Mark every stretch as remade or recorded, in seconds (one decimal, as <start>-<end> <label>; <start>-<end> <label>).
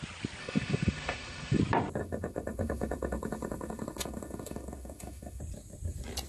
0.0-0.4 recorded; 0.4-1.6 remade; 1.6-2.0 recorded; 2.0-5.4 remade; 5.4-6.3 recorded